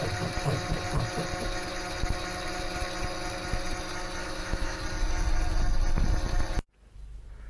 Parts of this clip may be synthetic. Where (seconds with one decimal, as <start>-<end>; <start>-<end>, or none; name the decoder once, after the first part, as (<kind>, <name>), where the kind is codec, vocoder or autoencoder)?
4.2-4.8 (autoencoder, DAC-VAE)